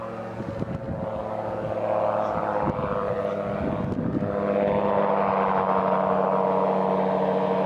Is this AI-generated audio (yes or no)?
no